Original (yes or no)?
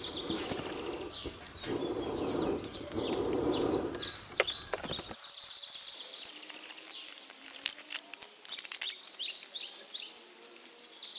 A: no